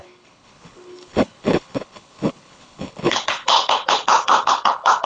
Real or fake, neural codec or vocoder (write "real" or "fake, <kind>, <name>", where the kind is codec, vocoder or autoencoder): fake, codec, HILCodec